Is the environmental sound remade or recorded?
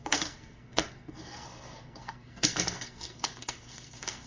remade